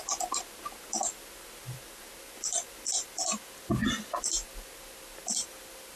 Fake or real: real